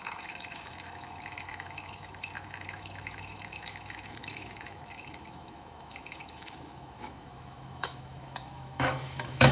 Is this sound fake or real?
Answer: fake